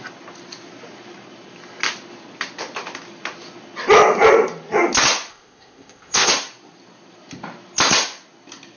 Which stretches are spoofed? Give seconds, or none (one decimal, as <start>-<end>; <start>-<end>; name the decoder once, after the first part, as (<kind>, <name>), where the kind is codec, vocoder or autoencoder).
5.3-6.3 (codec, ZipCodec)

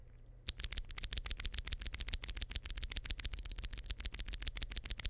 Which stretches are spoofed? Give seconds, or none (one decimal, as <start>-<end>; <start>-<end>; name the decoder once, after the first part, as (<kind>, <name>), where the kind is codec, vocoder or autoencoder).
none

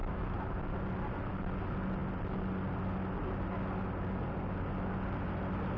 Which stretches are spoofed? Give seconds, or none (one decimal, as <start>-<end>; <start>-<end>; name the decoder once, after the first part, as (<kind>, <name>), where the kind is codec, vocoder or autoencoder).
0.0-0.6 (autoencoder, DAC-VAE)

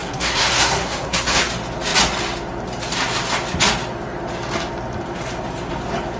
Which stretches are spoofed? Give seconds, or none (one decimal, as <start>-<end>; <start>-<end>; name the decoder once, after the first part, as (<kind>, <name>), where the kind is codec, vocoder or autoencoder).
0.0-1.4 (codec, SNAC)

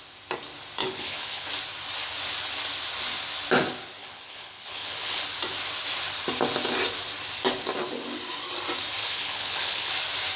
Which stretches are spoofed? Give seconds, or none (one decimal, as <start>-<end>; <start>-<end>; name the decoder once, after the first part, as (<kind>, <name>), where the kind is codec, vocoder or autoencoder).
0.8-1.5 (codec, HILCodec); 4.0-5.2; 9.0-9.9

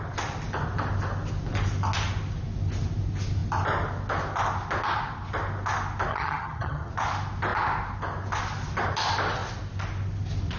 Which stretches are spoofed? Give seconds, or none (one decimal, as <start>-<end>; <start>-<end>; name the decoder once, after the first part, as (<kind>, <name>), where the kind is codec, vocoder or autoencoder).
6.1-6.9 (vocoder, HiFi-GAN)

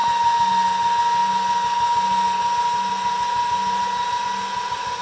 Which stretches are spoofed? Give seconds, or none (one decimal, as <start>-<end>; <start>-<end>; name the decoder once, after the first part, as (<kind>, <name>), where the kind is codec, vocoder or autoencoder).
none

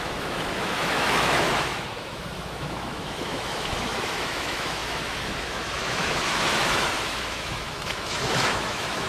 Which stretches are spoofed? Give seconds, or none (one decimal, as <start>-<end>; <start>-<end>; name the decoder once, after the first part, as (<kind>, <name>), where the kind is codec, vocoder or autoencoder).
0.0-9.1 (autoencoder, DAC-VAE)